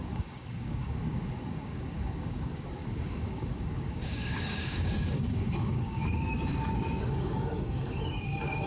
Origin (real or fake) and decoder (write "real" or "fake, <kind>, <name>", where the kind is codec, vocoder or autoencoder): fake, codec, DAC